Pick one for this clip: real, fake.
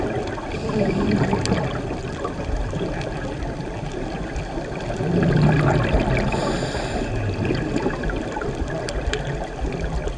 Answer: real